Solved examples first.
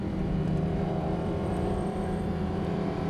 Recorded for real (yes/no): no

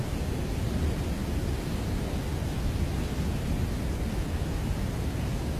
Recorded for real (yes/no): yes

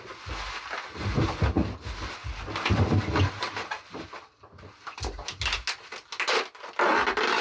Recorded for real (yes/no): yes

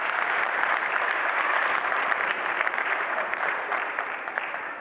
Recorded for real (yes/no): no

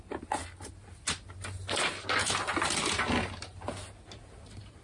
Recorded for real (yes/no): yes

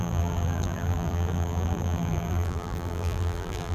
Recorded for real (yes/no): no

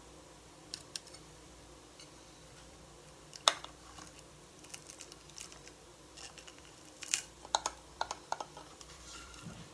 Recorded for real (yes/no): no